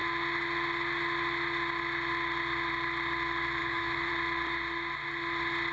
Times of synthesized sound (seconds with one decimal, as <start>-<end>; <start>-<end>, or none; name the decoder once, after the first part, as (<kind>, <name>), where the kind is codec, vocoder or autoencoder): 3.6-4.1 (autoencoder, DAC-VAE)